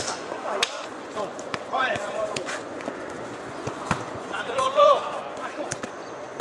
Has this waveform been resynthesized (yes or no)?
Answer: yes